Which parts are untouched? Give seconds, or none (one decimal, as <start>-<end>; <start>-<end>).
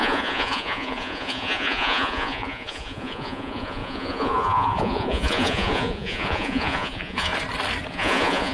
7.3-7.9